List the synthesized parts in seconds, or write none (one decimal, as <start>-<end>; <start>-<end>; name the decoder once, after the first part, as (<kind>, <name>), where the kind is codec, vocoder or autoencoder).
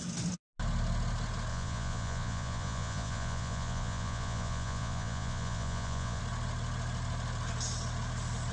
1.5-6.2 (vocoder, Vocos)